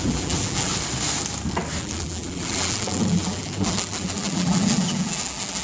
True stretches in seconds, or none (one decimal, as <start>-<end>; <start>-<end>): 0.7-1.8